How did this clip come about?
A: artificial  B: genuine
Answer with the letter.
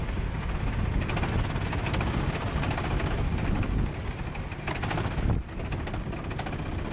B